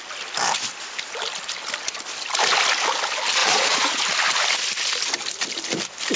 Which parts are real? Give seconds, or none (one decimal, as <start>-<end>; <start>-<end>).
0.0-3.4; 4.0-6.2

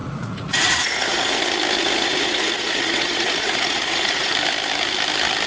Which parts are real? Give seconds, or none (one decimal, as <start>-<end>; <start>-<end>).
1.4-1.8; 4.3-5.5